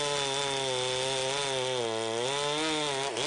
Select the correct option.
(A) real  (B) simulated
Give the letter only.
A